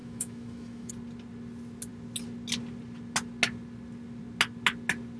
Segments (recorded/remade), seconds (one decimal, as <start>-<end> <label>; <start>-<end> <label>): 0.0-0.9 remade; 0.9-5.2 recorded